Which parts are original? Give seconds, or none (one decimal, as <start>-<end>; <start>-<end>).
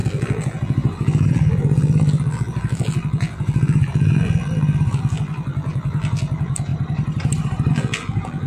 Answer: 6.7-7.7